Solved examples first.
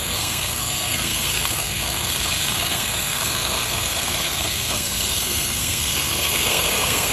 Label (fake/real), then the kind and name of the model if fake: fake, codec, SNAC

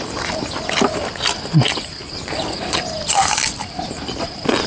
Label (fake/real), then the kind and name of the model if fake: real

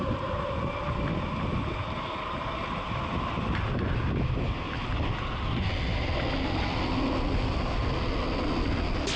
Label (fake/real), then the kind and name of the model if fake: real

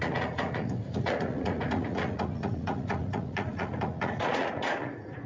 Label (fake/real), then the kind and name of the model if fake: fake, vocoder, Vocos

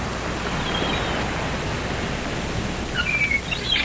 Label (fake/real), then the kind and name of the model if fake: real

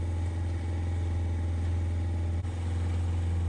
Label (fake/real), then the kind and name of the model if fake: real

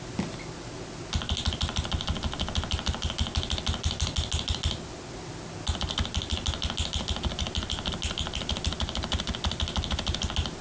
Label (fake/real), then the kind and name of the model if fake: real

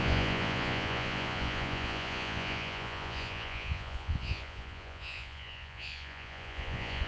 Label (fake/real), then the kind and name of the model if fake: fake, vocoder, Vocos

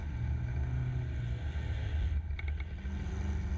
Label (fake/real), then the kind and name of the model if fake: real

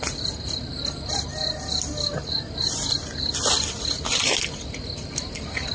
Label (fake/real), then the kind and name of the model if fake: real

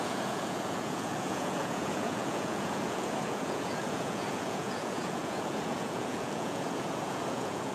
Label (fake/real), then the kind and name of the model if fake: fake, vocoder, Vocos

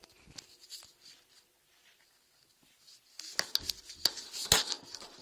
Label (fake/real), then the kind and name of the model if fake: real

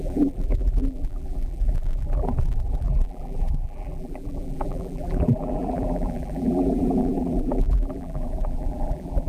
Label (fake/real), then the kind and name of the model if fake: fake, vocoder, BigVGAN v2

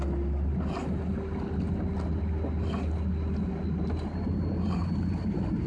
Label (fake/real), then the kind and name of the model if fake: real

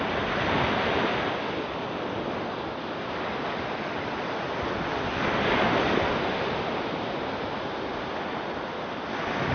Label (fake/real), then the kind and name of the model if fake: real